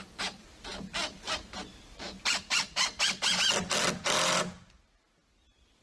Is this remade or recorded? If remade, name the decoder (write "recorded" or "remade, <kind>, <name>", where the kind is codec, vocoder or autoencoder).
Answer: recorded